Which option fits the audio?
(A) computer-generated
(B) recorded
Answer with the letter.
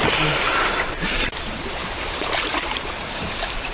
A